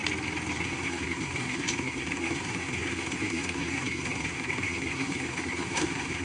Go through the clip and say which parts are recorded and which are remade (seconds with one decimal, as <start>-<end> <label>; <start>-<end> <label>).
0.0-0.6 recorded; 0.6-6.2 remade